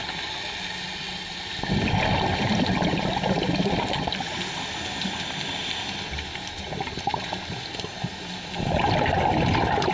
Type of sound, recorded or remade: recorded